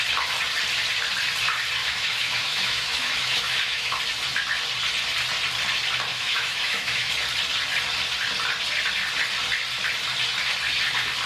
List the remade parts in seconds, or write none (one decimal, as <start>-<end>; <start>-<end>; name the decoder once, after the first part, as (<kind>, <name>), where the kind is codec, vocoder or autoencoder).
1.8-4.0 (autoencoder, DAC-VAE); 6.1-7.1